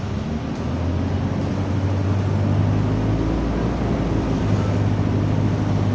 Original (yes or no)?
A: yes